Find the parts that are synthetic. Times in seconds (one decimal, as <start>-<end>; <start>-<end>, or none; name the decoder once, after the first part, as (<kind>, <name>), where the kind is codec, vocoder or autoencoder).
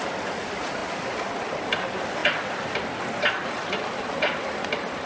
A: none